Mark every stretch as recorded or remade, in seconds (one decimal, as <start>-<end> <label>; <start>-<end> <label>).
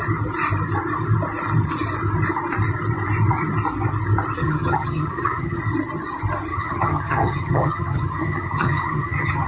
0.0-4.4 recorded; 4.4-5.6 remade; 5.6-6.5 recorded; 6.5-9.5 remade